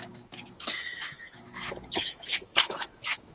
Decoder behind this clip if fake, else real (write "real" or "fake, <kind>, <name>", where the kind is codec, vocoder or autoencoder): fake, autoencoder, DAC-VAE